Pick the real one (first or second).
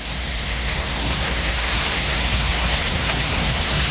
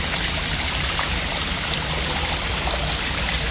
second